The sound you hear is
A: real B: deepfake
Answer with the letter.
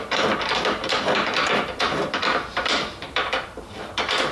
B